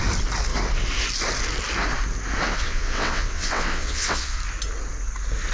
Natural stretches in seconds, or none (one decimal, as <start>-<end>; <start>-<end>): 0.0-2.5; 4.4-5.5